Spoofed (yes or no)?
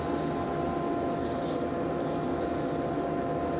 no